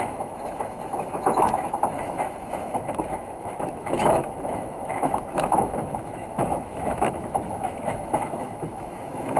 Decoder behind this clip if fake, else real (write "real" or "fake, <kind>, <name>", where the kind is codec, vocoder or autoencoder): fake, autoencoder, DAC-VAE